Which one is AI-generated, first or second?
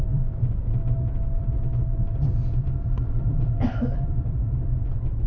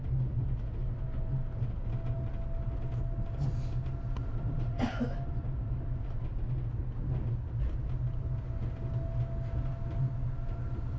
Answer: first